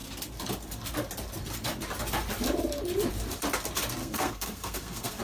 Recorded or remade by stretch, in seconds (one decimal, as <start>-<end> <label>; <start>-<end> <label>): 0.0-4.0 recorded; 4.0-5.2 remade